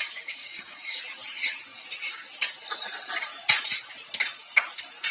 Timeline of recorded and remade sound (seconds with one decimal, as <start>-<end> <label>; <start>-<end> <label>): 0.0-0.4 recorded; 0.4-1.0 remade; 1.0-5.1 recorded